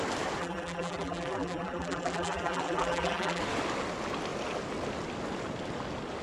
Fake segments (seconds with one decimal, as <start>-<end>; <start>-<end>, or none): 0.4-3.4